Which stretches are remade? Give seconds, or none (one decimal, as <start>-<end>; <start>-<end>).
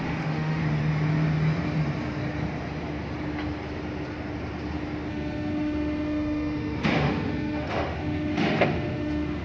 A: 0.0-0.6; 5.1-9.4